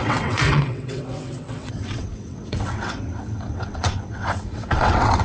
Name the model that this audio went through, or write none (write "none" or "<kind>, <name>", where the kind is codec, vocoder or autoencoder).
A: vocoder, WaveNeXt